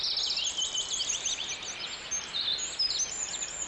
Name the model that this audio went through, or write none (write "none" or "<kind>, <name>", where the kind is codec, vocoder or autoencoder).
none